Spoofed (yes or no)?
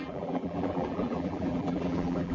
yes